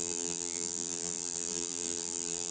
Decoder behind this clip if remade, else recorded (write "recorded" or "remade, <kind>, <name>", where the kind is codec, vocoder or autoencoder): remade, vocoder, BigVGAN v2